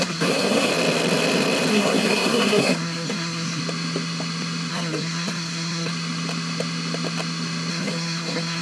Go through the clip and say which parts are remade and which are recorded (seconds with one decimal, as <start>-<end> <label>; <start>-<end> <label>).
0.0-0.7 remade; 0.7-1.7 recorded; 1.7-3.6 remade; 3.6-4.7 recorded; 4.7-5.9 remade; 5.9-7.7 recorded; 7.7-8.6 remade